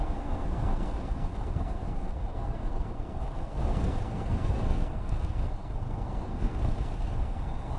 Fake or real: fake